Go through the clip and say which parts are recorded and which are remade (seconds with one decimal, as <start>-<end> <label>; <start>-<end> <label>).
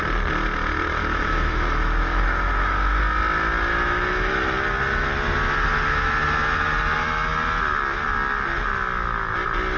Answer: 0.0-1.0 recorded; 1.0-3.0 remade; 3.0-3.7 recorded; 3.7-4.3 remade; 4.3-9.8 recorded